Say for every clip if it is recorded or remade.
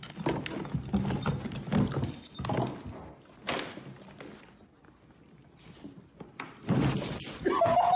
recorded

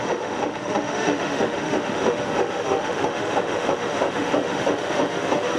remade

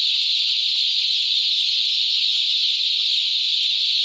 recorded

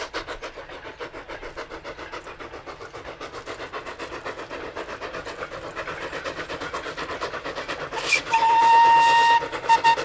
recorded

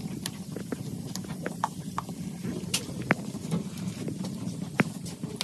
recorded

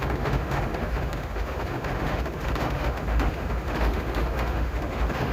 remade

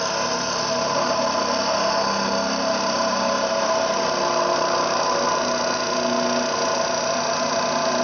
recorded